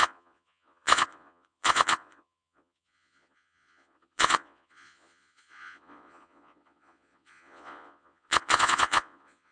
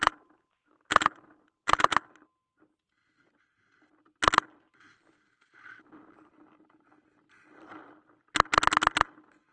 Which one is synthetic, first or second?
first